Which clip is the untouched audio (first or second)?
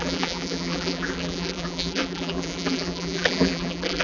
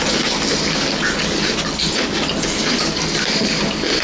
second